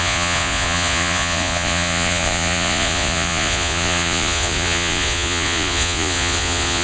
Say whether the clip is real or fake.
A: fake